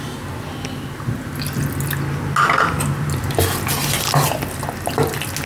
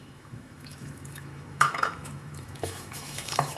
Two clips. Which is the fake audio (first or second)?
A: second